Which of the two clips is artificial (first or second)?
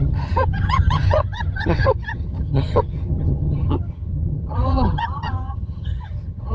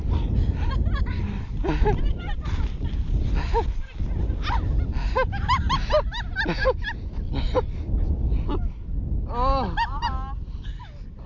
first